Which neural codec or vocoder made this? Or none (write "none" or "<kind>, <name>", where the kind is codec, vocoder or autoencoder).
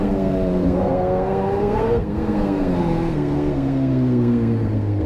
codec, SNAC